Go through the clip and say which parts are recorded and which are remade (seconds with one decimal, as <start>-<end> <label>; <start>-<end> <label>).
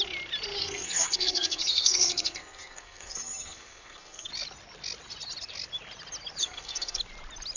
0.0-0.6 recorded; 0.6-4.3 remade; 4.3-6.4 recorded; 6.4-7.0 remade; 7.0-7.6 recorded